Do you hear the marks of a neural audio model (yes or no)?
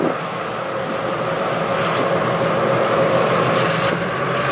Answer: no